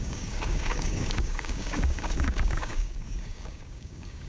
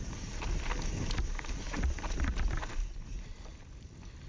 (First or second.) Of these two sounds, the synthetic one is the first